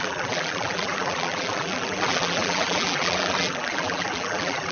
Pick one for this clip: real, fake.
fake